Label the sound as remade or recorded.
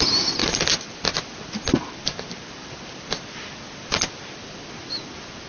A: remade